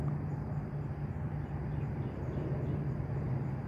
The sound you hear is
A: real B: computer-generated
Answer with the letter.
A